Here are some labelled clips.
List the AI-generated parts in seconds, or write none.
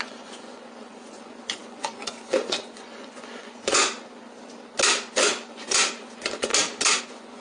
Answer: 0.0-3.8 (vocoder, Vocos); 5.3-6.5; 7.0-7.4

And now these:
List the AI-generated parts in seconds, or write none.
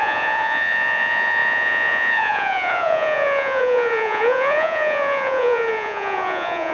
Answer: 0.0-6.7 (vocoder, Vocos)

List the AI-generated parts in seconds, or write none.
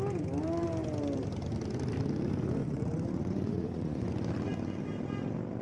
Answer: 2.6-4.1 (vocoder, Vocos)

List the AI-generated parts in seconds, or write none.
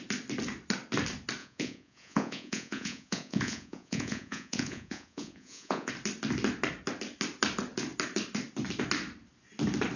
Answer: 1.4-5.9 (vocoder, Vocos)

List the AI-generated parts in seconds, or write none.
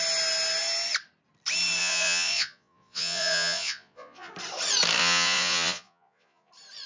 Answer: 1.8-4.3 (vocoder, Vocos); 5.0-6.5